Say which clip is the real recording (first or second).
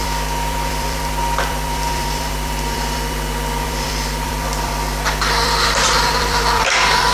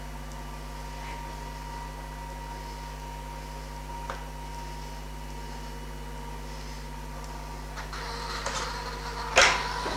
second